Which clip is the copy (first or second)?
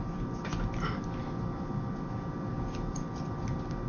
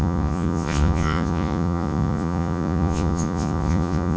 second